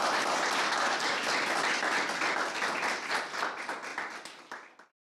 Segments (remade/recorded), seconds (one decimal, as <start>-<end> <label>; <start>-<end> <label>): 0.0-1.1 remade; 1.1-5.0 recorded